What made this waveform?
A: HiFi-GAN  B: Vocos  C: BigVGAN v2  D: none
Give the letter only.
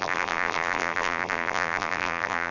C